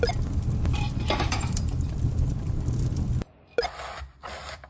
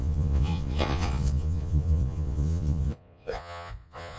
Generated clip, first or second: second